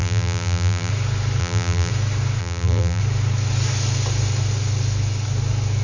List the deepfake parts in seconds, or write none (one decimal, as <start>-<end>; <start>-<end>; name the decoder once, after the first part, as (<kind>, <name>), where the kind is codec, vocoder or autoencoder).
0.0-0.9 (vocoder, BigVGAN v2); 1.4-1.9; 2.4-3.0